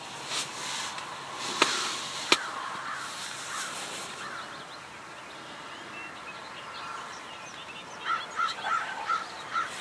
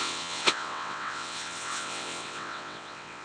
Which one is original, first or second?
first